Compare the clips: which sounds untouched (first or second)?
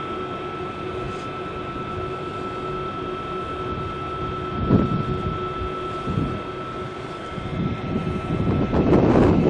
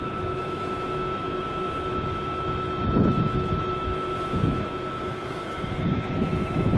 first